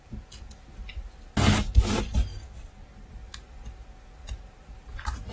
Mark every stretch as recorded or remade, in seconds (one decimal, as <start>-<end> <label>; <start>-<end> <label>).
0.0-4.2 recorded; 4.2-5.3 remade